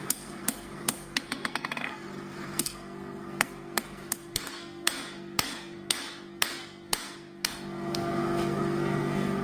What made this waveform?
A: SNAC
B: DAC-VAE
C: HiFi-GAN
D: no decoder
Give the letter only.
A